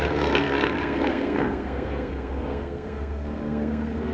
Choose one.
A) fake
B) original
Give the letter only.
A